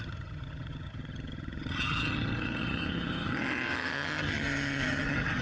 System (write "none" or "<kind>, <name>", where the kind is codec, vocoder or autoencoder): vocoder, HiFi-GAN